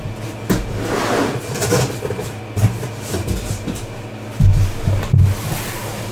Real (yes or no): yes